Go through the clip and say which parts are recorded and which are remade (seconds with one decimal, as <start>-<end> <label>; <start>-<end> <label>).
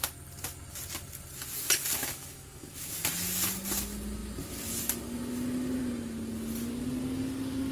0.0-2.0 recorded; 2.0-3.0 remade; 3.0-7.7 recorded